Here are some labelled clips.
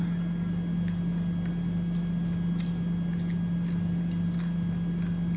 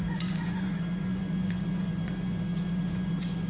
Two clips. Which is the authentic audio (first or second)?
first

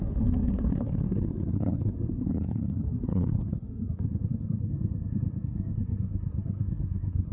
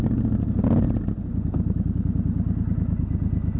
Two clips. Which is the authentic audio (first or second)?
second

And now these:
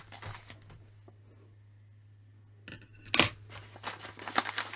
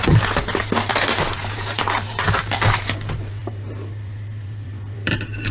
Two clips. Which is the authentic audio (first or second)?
first